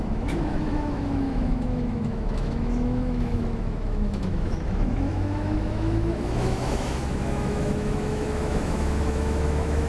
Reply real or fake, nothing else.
fake